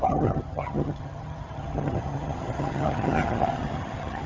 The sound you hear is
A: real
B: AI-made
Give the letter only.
B